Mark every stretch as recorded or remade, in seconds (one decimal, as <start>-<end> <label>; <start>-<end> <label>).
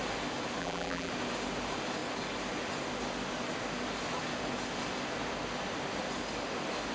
0.0-0.6 recorded; 0.6-1.1 remade; 1.1-6.9 recorded